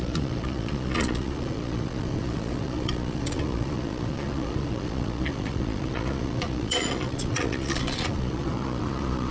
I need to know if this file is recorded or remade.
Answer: remade